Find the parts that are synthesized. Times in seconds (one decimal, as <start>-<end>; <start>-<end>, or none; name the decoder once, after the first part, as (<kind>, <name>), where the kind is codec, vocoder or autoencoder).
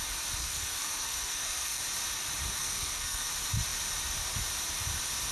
0.4-1.8 (codec, SNAC); 2.6-3.3